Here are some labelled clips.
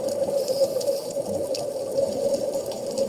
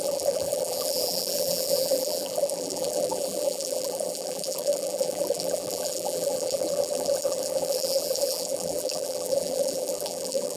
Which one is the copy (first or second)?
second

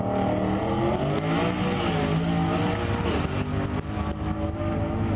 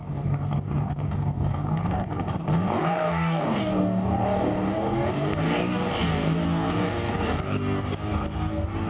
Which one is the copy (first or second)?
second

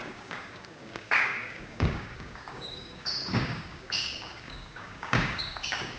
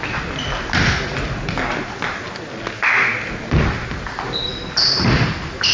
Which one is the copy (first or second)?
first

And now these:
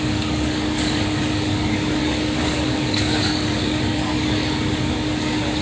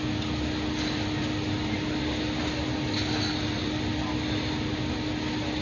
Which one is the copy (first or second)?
first